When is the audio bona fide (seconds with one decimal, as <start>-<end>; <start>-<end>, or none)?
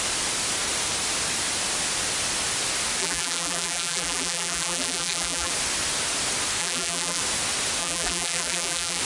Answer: 0.0-3.0; 5.5-6.6; 7.2-7.8